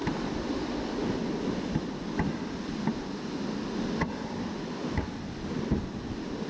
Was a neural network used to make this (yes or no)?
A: no